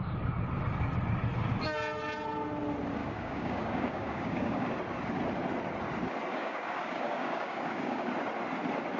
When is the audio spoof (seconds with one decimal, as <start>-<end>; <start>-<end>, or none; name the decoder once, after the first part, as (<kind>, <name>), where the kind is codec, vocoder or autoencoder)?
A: 3.0-4.7 (codec, DAC); 6.3-8.1